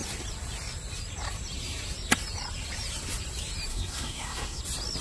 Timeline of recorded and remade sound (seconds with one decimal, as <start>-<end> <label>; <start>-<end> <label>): 0.0-3.7 recorded; 3.7-4.6 remade; 4.6-5.0 recorded